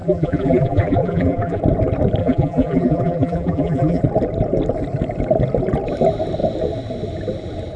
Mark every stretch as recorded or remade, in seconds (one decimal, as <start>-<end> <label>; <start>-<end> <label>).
0.0-1.6 remade; 1.6-2.2 recorded; 2.2-4.0 remade; 4.0-7.8 recorded